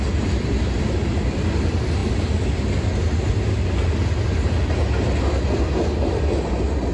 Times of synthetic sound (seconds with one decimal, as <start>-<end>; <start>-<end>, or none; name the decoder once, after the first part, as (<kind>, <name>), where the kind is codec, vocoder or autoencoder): none